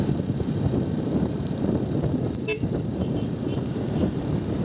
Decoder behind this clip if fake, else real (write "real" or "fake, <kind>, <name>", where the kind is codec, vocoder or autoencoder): fake, vocoder, BigVGAN v2